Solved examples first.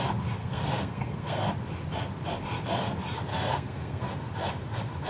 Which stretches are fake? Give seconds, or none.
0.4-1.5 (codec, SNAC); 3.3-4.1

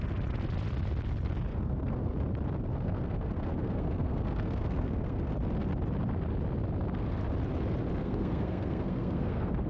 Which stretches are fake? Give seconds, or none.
1.5-2.1 (codec, SNAC); 2.7-5.3; 8.0-9.7

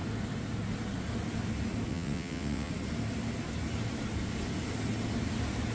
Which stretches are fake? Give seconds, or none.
1.9-2.7 (vocoder, WaveNeXt)

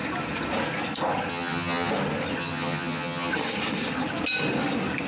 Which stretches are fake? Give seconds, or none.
1.3-1.9 (vocoder, HiFi-GAN); 2.4-3.3